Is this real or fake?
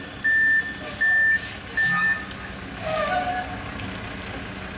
real